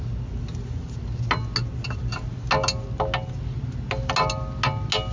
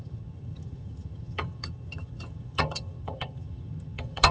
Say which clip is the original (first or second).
first